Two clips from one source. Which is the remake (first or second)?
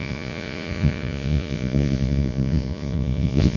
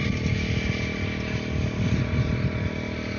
first